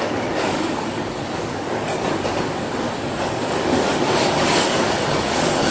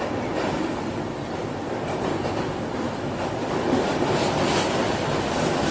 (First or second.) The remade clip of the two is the first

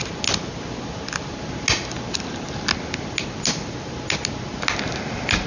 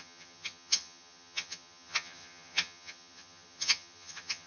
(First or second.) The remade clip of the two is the second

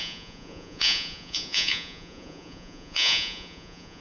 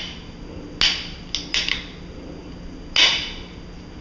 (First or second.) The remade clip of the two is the first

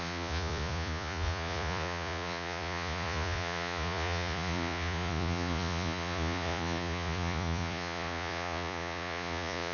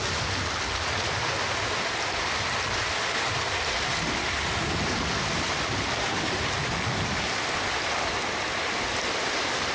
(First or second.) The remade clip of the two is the first